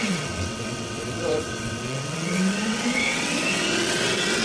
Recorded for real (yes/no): no